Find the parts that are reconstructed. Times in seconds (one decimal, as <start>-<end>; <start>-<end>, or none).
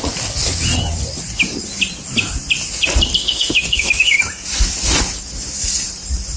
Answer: 3.2-4.2